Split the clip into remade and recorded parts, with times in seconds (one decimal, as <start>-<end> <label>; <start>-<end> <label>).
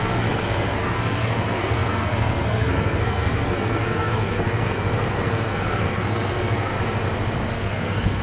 0.0-6.7 remade; 6.7-7.5 recorded; 7.5-8.2 remade